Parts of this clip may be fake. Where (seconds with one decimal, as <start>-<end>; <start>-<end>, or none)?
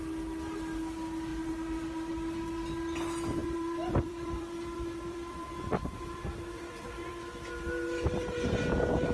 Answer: 3.4-7.1